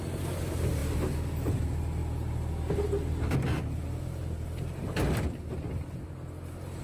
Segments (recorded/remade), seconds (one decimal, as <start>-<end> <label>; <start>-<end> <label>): 0.0-6.8 recorded